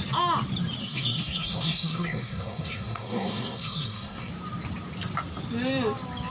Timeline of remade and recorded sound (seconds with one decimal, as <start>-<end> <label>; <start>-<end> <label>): 0.0-0.8 recorded; 0.8-4.3 remade; 4.3-6.3 recorded